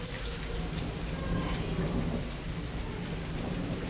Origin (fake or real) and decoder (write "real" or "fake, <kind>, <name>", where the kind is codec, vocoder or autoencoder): real